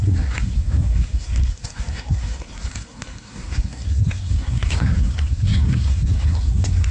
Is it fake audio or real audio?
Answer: fake